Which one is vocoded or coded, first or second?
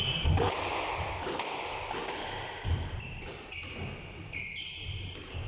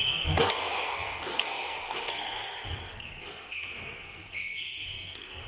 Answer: second